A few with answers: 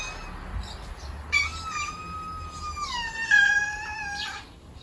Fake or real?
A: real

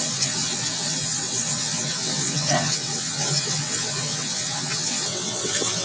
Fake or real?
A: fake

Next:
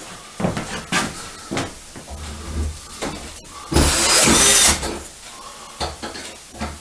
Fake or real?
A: real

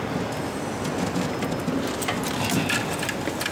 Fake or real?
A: real